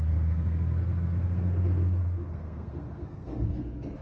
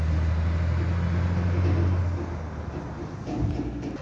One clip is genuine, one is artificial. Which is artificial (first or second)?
first